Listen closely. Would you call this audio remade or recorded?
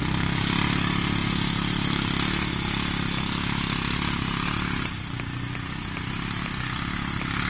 recorded